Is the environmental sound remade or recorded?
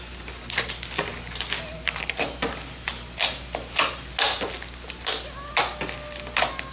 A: recorded